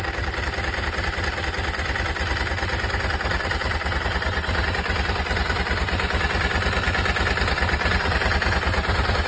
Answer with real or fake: real